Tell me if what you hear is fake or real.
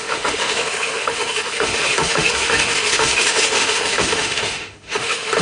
fake